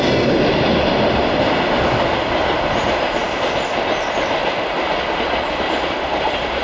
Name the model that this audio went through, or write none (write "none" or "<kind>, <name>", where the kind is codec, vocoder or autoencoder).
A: none